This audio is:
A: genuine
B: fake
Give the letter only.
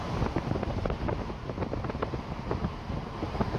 A